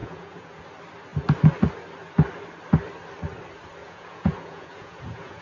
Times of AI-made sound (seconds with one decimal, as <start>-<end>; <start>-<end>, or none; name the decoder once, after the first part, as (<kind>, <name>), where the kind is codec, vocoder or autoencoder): 0.0-0.6 (vocoder, Vocos); 3.8-5.4